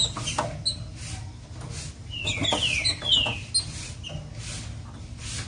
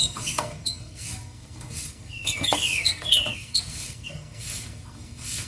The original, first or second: first